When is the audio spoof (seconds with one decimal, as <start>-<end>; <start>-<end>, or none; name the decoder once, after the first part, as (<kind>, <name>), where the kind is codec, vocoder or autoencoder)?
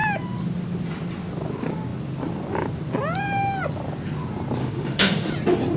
4.6-5.3 (autoencoder, DAC-VAE)